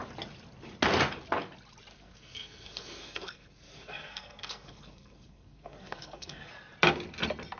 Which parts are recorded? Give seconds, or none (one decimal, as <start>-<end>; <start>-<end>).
0.0-1.9; 6.5-7.6